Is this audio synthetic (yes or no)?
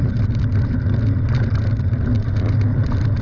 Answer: no